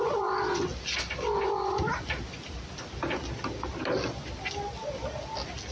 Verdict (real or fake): real